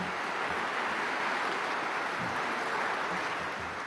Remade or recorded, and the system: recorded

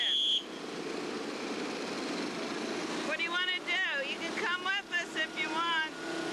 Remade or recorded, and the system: recorded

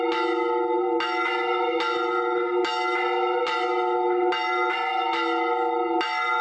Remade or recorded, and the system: recorded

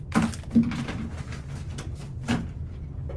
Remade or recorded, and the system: recorded